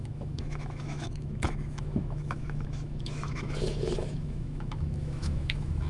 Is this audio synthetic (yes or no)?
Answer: yes